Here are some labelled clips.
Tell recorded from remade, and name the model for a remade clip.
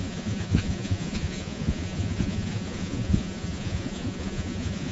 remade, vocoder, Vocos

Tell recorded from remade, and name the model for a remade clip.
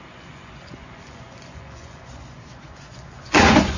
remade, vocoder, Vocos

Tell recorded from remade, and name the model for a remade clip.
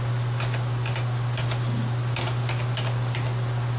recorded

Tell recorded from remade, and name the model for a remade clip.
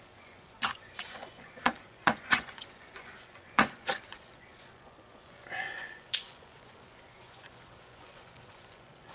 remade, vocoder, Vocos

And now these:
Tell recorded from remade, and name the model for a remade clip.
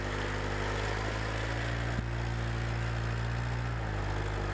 recorded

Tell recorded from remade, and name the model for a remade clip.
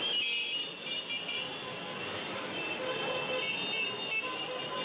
recorded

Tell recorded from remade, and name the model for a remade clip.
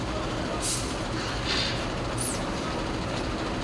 recorded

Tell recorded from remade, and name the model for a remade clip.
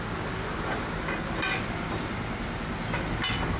recorded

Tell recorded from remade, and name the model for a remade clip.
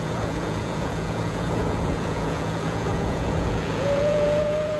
remade, vocoder, Vocos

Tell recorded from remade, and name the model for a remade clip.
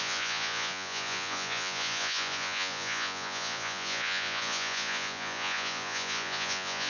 remade, vocoder, Vocos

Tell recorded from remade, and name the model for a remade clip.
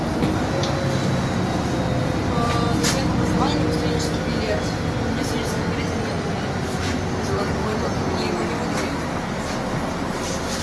recorded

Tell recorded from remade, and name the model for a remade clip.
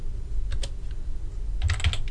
recorded